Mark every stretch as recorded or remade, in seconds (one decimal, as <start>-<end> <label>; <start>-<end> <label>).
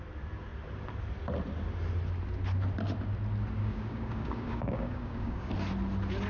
0.0-3.6 recorded; 3.6-5.5 remade; 5.5-6.3 recorded